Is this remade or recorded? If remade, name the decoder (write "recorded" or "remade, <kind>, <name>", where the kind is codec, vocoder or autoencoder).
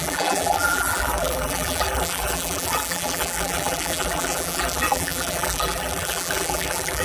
remade, vocoder, BigVGAN v2